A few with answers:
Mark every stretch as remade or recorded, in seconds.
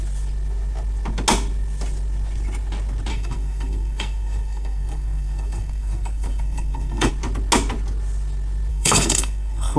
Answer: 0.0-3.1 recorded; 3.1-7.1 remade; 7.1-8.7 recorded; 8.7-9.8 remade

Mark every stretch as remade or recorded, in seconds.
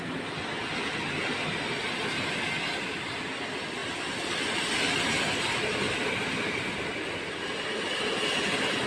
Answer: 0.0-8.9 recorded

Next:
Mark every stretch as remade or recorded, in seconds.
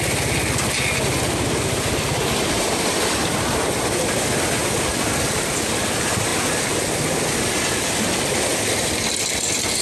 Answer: 0.0-9.8 recorded